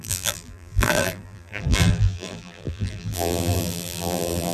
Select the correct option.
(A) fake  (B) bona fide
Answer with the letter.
A